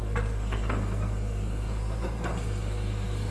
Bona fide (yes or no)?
no